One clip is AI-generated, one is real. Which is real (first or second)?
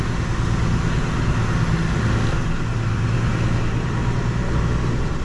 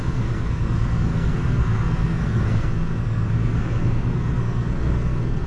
first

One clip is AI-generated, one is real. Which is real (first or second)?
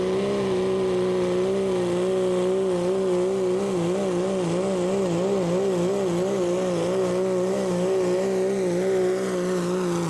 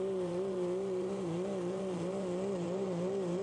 first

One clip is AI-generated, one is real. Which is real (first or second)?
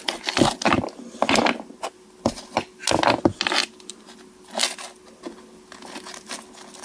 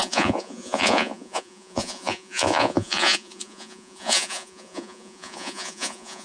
first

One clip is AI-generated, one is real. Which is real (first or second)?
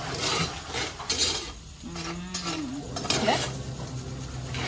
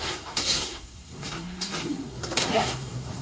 first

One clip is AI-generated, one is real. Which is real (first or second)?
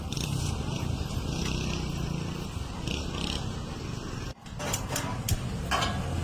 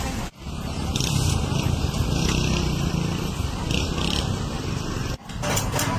first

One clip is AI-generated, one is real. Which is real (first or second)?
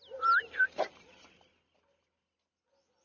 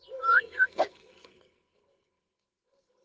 first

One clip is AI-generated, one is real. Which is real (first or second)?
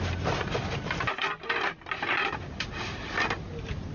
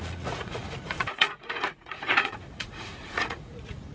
first